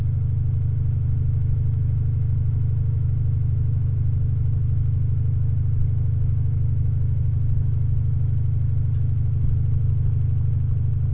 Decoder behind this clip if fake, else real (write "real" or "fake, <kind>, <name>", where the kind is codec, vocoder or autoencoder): real